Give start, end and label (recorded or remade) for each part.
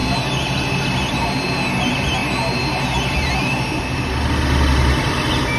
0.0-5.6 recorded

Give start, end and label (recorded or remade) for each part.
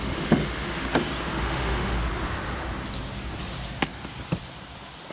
0.0-0.8 remade; 0.8-1.4 recorded; 1.4-2.0 remade; 2.0-5.1 recorded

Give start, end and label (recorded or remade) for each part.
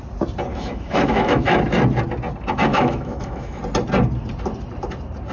0.0-0.5 recorded; 0.5-1.6 remade; 1.6-2.7 recorded; 2.7-3.6 remade; 3.6-5.3 recorded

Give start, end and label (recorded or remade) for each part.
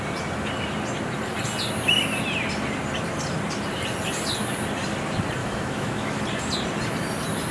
0.0-5.4 recorded; 5.4-6.2 remade; 6.2-7.5 recorded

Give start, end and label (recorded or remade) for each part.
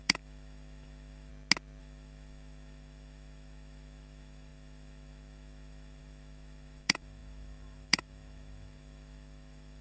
0.0-1.3 remade; 1.3-1.8 recorded; 1.8-9.8 remade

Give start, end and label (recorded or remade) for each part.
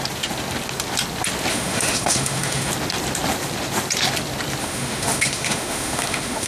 0.0-1.5 recorded; 1.5-2.7 remade; 2.7-4.6 recorded; 4.6-6.5 remade